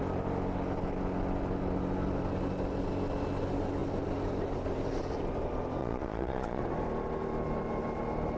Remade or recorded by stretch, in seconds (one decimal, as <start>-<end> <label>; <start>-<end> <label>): 0.0-5.8 recorded; 5.8-6.6 remade; 6.6-8.4 recorded